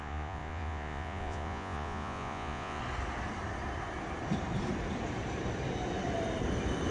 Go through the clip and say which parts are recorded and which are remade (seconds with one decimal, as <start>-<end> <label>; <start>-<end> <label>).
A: 0.0-2.8 remade; 2.8-6.9 recorded